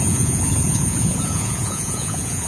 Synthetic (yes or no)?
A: yes